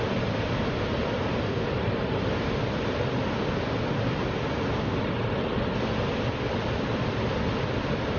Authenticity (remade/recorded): recorded